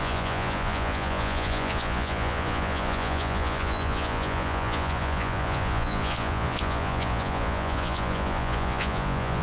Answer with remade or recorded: remade